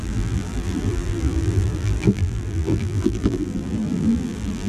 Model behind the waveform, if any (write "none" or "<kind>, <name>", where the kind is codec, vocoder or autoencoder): vocoder, BigVGAN v2